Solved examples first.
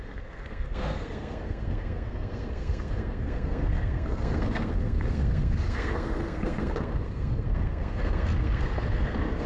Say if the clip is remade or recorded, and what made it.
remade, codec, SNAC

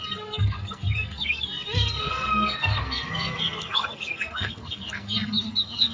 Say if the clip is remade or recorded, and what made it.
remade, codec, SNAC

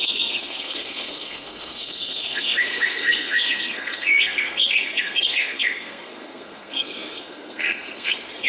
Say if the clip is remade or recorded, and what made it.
remade, codec, SNAC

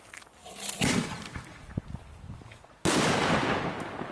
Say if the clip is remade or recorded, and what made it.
recorded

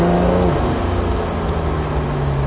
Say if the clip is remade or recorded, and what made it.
recorded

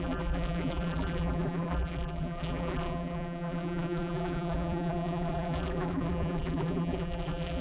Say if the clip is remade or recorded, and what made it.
remade, vocoder, BigVGAN v2